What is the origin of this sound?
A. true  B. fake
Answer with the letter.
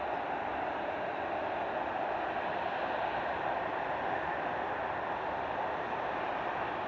A